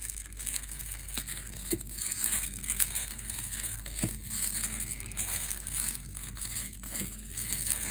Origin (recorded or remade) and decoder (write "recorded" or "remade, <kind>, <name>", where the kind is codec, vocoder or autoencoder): remade, codec, SNAC